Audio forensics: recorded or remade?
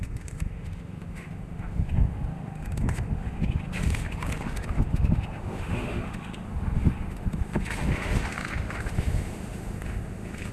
remade